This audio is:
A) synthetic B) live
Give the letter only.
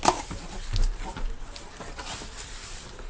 B